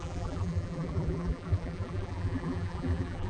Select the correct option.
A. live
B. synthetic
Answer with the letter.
B